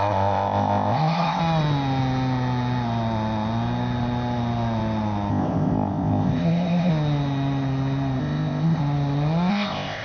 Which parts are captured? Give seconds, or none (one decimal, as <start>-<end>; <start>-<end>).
1.4-5.3; 6.9-8.2; 8.8-9.5